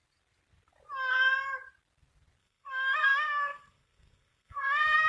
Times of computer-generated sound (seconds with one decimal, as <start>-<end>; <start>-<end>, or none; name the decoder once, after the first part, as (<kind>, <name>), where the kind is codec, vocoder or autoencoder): 2.4-5.1 (codec, SNAC)